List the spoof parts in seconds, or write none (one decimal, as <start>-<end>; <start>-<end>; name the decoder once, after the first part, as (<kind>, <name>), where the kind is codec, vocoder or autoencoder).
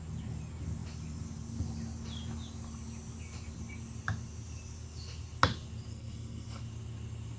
5.9-6.6 (codec, SNAC)